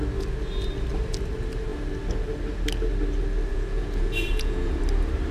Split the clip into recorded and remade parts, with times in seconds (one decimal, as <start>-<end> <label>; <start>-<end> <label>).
0.0-3.5 recorded; 3.5-4.8 remade; 4.8-5.3 recorded